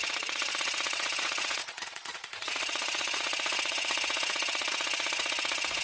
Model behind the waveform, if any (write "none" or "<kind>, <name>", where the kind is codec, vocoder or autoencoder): vocoder, Vocos